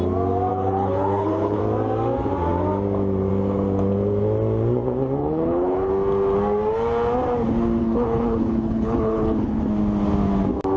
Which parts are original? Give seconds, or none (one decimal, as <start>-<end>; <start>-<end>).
0.0-0.5; 1.6-5.2; 5.9-7.8; 9.6-10.8